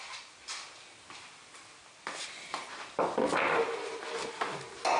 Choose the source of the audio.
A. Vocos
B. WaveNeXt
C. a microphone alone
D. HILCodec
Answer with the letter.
C